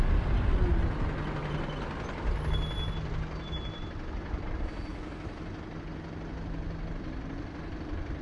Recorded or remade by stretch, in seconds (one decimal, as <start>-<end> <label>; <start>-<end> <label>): 0.0-0.7 remade; 0.7-3.4 recorded; 3.4-4.9 remade; 4.9-5.8 recorded; 5.8-8.2 remade